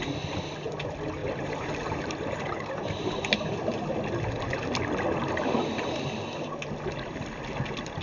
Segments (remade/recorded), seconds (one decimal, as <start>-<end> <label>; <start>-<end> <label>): 0.0-1.2 recorded; 1.2-3.2 remade; 3.2-8.0 recorded